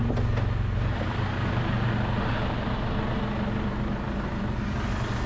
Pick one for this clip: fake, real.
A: real